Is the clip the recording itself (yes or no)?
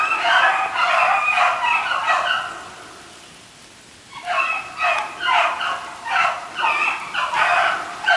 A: yes